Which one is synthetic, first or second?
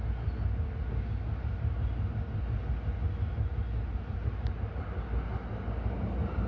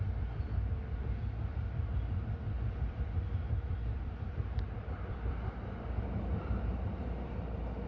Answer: second